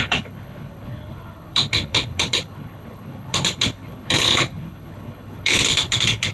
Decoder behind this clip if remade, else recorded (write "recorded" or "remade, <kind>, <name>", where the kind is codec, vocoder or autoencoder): remade, codec, HILCodec